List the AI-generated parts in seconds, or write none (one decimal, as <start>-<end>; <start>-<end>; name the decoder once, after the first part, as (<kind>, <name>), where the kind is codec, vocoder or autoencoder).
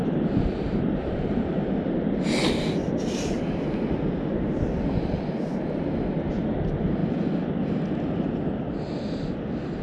0.0-1.6 (vocoder, BigVGAN v2)